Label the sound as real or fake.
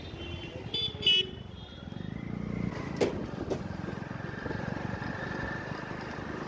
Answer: real